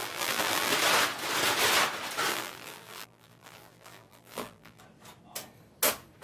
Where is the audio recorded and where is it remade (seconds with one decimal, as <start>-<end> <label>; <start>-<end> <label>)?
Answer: 0.0-0.7 remade; 0.7-2.3 recorded; 2.3-4.8 remade; 4.8-6.2 recorded